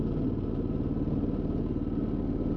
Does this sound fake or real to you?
real